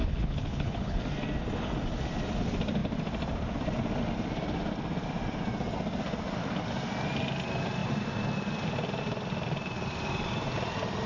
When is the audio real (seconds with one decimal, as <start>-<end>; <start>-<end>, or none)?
1.0-11.1

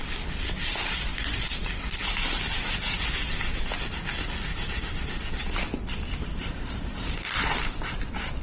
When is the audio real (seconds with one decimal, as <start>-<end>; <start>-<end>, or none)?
0.0-2.0; 3.0-4.1; 4.8-6.1; 7.6-8.4

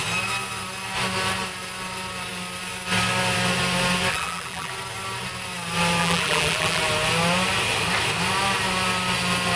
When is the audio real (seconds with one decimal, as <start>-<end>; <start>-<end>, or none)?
0.0-4.1; 4.7-6.0; 6.8-9.6

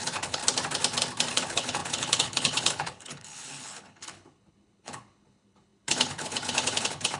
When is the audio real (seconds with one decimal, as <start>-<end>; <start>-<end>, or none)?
0.4-1.3

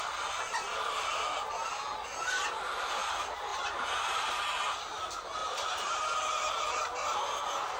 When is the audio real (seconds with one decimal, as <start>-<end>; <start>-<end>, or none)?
0.0-3.5; 4.2-5.4; 6.0-7.8